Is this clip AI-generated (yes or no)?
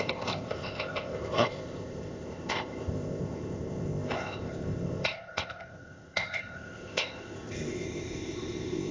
yes